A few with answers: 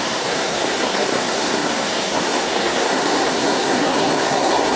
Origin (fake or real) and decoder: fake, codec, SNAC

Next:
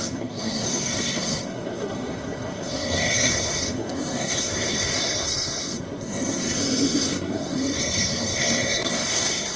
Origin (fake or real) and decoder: fake, codec, SNAC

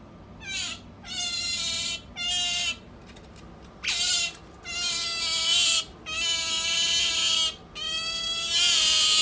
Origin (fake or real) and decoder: real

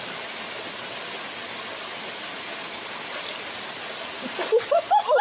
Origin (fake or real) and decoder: real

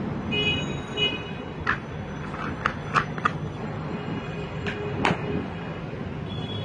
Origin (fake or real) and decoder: real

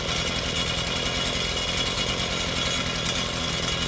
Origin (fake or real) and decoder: real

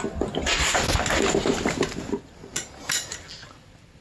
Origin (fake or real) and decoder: real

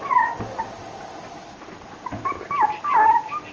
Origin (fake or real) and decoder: real